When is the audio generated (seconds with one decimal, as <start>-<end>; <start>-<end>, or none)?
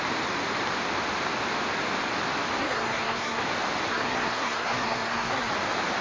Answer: 2.6-3.4; 3.9-5.5